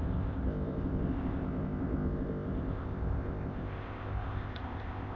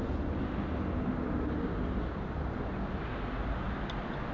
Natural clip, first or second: second